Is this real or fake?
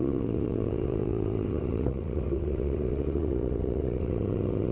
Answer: fake